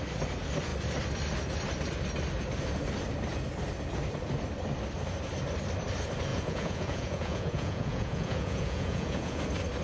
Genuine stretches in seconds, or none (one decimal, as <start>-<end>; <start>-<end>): 0.0-6.3; 9.4-9.8